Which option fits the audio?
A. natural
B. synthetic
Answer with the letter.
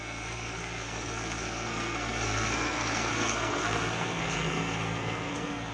B